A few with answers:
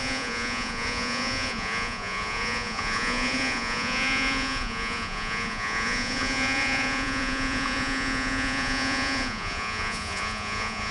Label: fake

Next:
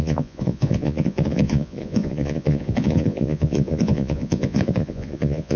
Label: fake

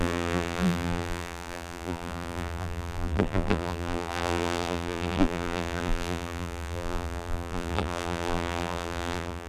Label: fake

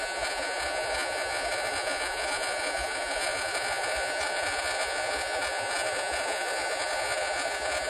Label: fake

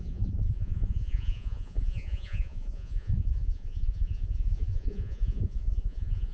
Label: fake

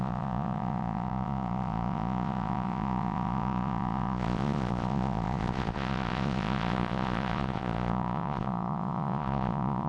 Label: fake